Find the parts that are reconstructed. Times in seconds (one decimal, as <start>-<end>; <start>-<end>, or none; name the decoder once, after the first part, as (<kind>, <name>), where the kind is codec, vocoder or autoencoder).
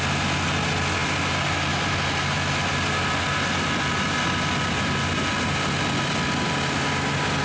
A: none